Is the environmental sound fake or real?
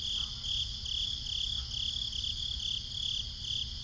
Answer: real